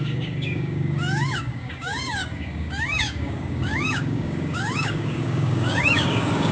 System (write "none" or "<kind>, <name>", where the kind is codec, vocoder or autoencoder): codec, DAC